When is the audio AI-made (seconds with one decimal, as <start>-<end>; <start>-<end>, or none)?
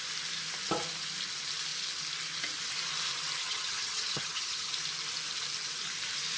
3.4-4.7